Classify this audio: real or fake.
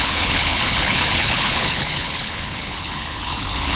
fake